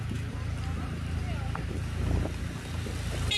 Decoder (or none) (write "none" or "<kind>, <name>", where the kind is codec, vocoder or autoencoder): none